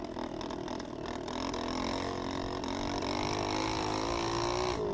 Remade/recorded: recorded